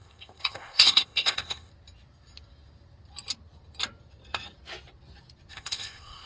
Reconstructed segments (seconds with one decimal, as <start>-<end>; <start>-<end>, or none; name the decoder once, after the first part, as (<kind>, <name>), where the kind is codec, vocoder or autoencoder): 0.0-1.7 (codec, ZipCodec); 5.5-6.3